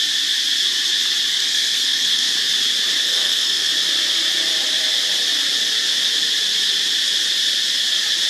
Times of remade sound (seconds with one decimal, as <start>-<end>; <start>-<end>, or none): 1.3-2.3; 3.0-3.7